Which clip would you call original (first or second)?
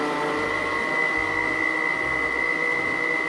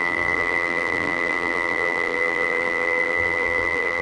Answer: first